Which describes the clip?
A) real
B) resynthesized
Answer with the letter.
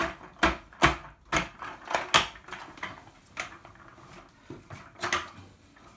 A